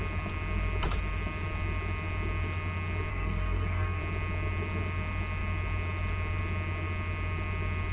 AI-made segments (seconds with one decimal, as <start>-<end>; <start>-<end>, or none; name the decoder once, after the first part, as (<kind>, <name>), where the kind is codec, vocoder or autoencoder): 3.1-4.0 (codec, SNAC)